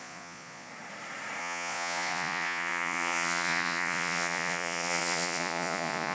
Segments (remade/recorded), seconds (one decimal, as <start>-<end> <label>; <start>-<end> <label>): 0.0-0.7 remade; 0.7-1.4 recorded; 1.4-6.1 remade